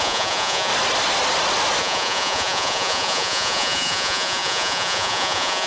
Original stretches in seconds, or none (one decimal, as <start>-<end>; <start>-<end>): 0.7-1.8